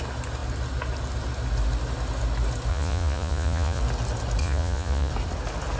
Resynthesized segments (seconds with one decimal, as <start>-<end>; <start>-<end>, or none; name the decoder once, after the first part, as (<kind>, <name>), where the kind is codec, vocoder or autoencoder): 2.7-3.8 (vocoder, Vocos); 4.4-5.1